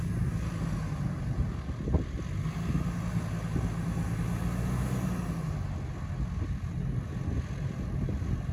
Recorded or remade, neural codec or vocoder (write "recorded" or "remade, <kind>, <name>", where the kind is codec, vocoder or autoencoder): recorded